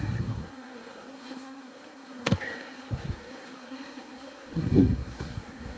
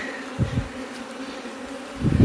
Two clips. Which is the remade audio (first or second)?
first